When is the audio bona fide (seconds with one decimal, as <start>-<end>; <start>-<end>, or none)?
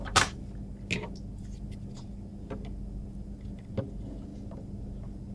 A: 0.0-5.3